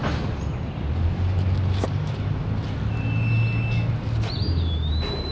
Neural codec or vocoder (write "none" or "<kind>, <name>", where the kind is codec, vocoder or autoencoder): none